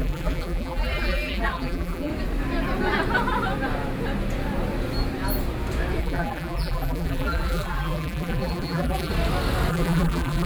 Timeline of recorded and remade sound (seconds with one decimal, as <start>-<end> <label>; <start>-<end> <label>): 0.0-2.1 remade; 2.1-6.0 recorded; 6.0-9.1 remade; 9.1-9.7 recorded; 9.7-10.5 remade